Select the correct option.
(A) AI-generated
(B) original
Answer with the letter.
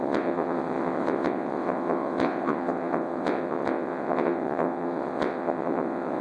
A